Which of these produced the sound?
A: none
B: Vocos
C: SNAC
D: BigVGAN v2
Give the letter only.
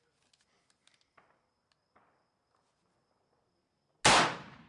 A